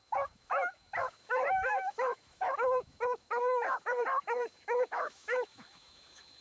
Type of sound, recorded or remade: remade